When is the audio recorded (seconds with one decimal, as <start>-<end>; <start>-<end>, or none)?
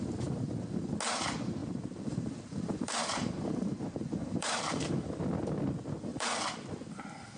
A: 0.0-1.6; 3.8-4.2; 5.1-6.1; 6.8-7.4